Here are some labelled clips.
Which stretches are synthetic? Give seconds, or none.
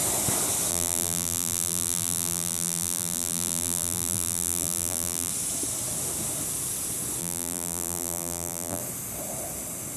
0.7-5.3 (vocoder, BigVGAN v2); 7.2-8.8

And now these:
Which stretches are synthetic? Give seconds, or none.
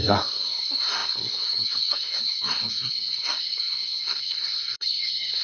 0.0-5.4 (codec, SNAC)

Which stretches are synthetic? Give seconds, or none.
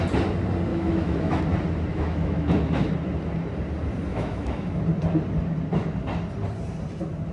0.7-1.4 (autoencoder, DAC-VAE); 1.9-2.9; 4.1-4.8